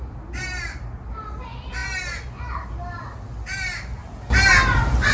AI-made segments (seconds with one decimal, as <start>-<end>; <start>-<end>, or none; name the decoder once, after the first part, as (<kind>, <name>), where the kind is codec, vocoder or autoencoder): none